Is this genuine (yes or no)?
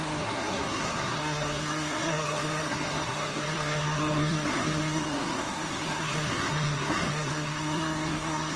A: no